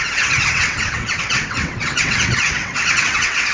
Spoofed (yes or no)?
yes